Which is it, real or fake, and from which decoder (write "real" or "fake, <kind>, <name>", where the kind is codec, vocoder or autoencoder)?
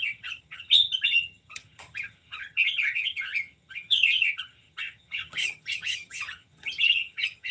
fake, vocoder, HiFi-GAN